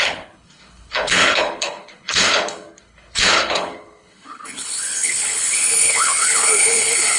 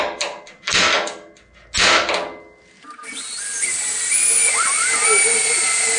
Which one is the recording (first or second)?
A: second